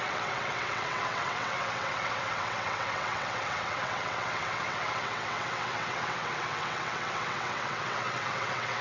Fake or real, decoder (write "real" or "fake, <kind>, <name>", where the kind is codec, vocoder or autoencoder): fake, vocoder, WaveNeXt